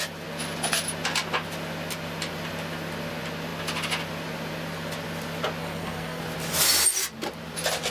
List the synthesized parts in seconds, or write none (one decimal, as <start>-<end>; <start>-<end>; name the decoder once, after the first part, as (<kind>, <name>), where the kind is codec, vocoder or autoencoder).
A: 5.6-6.2 (codec, SNAC)